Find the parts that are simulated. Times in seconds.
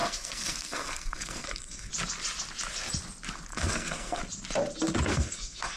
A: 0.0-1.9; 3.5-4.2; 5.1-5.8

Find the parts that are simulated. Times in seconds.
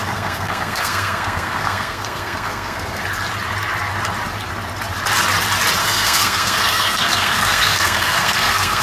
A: 0.0-3.0; 5.8-8.8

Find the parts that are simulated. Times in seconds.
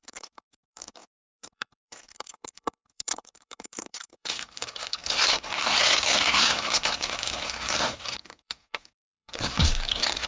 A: 0.0-10.3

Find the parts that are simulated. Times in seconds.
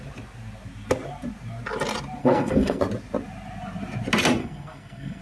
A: 2.2-2.8; 4.4-5.2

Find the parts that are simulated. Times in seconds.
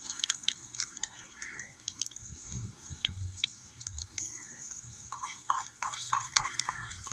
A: 0.0-7.1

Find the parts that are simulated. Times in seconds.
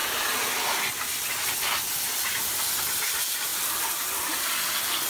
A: none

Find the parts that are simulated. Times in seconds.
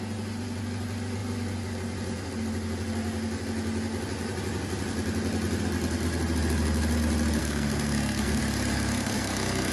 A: 7.4-8.4; 8.9-9.7